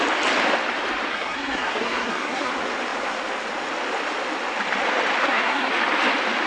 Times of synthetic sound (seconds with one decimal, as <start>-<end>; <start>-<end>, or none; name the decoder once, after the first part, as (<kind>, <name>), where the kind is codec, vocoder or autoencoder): 1.1-2.5 (codec, SNAC); 5.2-5.7